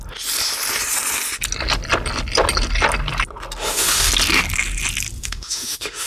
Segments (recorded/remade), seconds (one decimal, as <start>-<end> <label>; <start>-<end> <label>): 0.0-3.6 recorded; 3.6-4.1 remade; 4.1-5.2 recorded; 5.2-6.1 remade